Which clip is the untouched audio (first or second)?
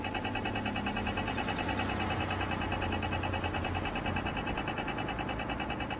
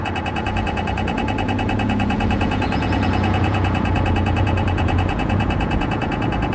first